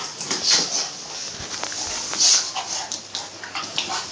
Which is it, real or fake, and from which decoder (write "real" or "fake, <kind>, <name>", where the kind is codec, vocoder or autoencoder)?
real